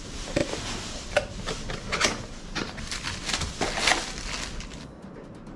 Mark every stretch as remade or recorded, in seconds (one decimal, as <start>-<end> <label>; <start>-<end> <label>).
0.0-0.4 recorded; 0.4-3.5 remade; 3.5-5.6 recorded